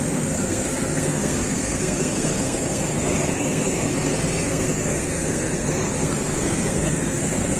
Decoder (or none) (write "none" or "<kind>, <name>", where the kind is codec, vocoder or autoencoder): codec, SNAC